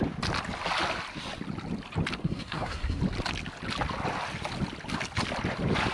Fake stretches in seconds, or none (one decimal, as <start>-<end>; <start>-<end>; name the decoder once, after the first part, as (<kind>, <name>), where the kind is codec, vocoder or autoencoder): 2.2-3.0 (codec, SNAC)